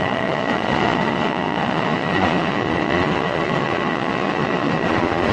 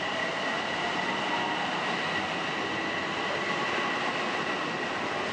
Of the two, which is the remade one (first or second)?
first